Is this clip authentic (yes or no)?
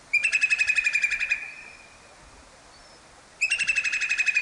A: yes